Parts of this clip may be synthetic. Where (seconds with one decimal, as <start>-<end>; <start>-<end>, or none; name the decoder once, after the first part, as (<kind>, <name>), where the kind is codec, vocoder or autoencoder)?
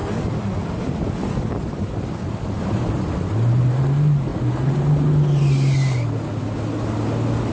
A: none